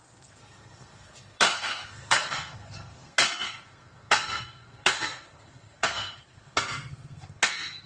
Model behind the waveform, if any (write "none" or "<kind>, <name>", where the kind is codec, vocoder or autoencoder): codec, SNAC